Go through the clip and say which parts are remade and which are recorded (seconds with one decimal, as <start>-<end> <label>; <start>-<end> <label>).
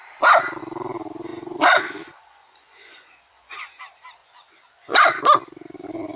0.0-1.3 recorded; 1.3-3.8 remade; 3.8-4.2 recorded; 4.2-5.2 remade; 5.2-6.2 recorded